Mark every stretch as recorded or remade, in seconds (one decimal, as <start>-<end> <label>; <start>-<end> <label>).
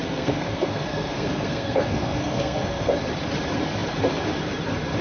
0.0-2.9 remade; 2.9-5.0 recorded